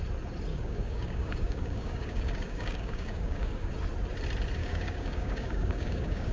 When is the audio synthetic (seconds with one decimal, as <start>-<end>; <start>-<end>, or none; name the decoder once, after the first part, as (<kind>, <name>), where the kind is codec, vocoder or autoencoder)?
0.5-3.7 (codec, DAC); 4.6-6.3